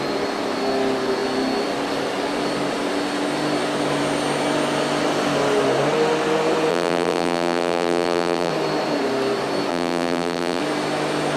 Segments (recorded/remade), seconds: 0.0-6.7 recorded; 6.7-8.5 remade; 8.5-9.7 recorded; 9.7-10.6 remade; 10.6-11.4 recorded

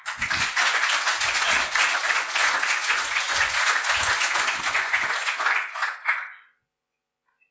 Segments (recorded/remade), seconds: 0.0-7.5 remade